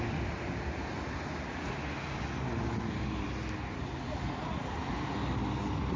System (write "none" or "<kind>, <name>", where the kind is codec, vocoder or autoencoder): none